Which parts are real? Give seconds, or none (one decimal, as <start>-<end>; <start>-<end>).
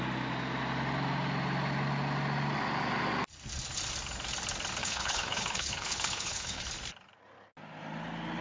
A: 0.0-4.8; 6.7-8.4